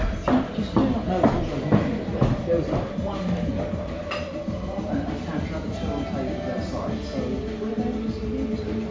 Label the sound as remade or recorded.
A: recorded